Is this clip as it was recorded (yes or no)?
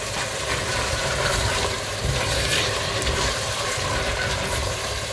no